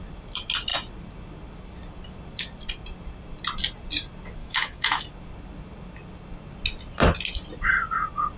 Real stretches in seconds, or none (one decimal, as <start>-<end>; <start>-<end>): 0.0-4.4; 5.0-8.4